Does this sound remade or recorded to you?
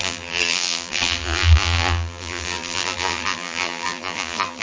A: remade